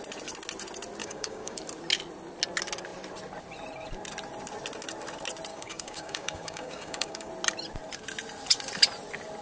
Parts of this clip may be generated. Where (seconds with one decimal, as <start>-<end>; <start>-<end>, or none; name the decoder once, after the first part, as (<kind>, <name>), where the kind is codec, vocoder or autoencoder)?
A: 1.0-1.6 (codec, DAC); 5.5-7.3

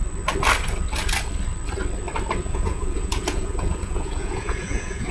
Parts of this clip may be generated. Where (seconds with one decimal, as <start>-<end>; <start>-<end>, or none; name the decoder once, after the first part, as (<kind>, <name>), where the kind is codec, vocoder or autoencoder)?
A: 2.4-5.1 (vocoder, Vocos)

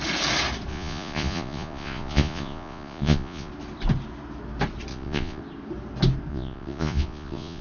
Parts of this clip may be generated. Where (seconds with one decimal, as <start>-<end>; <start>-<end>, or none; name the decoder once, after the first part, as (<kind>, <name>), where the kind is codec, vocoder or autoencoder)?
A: 0.7-3.5 (vocoder, Vocos); 4.9-5.4; 6.3-7.6

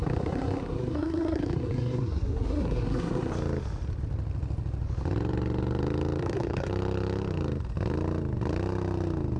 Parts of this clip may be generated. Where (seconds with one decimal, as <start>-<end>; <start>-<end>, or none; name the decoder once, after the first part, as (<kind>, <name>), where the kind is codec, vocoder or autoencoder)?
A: 0.0-3.3 (codec, SNAC); 6.2-6.7

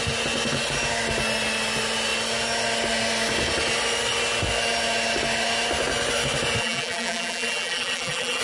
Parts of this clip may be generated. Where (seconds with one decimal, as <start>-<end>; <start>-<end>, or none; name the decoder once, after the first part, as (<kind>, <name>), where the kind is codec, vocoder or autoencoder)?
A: 6.6-8.4 (vocoder, BigVGAN v2)

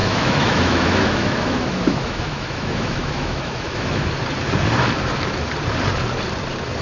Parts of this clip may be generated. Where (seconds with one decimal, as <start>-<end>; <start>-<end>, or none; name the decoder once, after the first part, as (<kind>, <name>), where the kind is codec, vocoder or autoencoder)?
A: 0.0-4.1 (autoencoder, DAC-VAE)

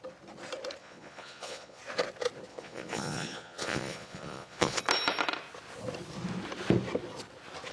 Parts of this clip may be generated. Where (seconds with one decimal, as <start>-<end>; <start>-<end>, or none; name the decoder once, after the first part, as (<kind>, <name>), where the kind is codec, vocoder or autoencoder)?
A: 0.8-1.8 (vocoder, Vocos); 2.5-4.8

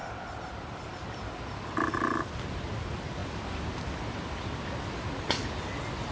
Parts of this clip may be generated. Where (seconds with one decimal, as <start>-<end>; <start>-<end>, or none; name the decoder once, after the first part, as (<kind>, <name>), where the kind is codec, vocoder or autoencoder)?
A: none